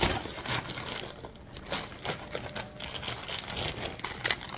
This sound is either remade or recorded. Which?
recorded